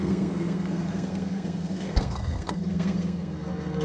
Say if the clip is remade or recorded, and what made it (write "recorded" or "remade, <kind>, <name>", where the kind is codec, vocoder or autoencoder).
remade, codec, SNAC